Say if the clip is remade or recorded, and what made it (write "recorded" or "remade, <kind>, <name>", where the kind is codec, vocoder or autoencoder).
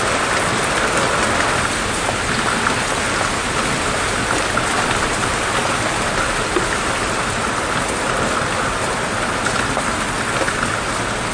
recorded